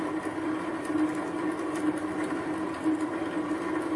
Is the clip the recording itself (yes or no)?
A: yes